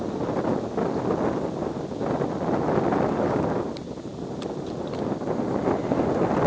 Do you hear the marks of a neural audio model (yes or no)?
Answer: no